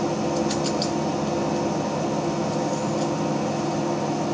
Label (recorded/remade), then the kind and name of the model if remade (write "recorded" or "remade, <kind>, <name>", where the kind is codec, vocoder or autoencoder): recorded